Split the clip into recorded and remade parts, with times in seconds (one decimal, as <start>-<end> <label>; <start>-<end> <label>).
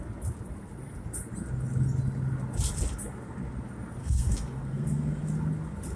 0.0-4.0 recorded; 4.0-5.2 remade; 5.2-6.0 recorded